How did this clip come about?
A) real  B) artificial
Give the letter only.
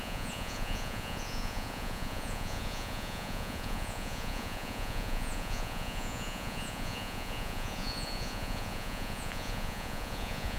B